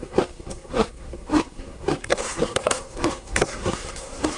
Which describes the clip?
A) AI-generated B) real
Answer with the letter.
A